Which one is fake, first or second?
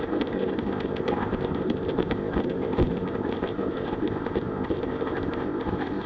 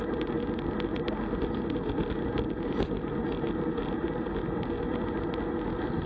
first